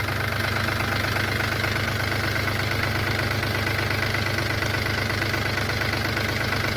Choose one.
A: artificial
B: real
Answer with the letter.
B